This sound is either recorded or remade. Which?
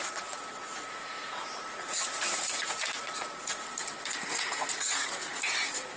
remade